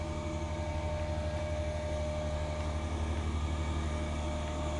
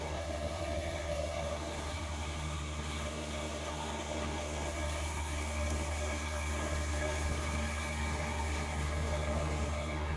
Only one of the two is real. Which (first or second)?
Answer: first